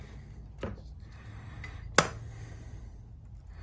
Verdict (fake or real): real